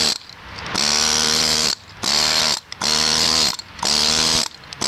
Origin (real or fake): real